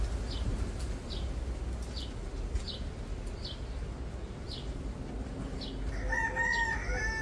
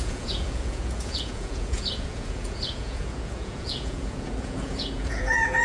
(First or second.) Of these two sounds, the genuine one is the first